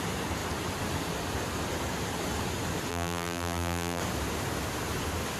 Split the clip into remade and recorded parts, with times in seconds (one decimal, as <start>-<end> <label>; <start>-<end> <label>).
0.0-2.9 recorded; 2.9-4.0 remade; 4.0-5.4 recorded